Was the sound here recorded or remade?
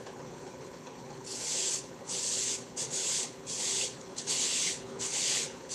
remade